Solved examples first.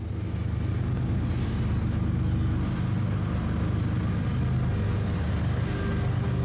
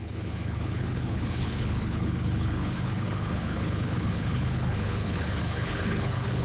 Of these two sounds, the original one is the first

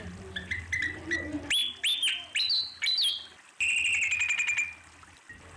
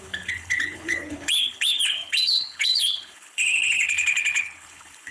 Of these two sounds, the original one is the first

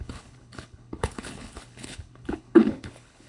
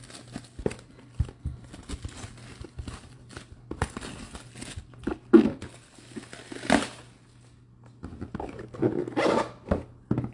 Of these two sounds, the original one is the second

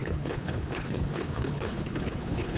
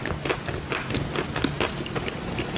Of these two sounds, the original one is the second